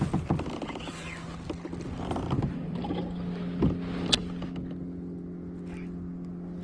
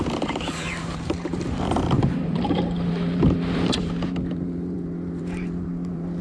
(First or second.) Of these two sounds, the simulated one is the second